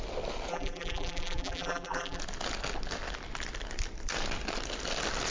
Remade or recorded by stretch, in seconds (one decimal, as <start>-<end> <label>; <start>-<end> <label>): 0.0-0.5 recorded; 0.5-2.2 remade; 2.2-5.3 recorded